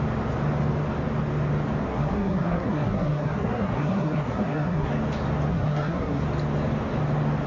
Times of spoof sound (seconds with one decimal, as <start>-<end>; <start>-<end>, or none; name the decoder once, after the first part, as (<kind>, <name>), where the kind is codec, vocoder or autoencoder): 1.9-4.9 (codec, SNAC); 5.5-6.2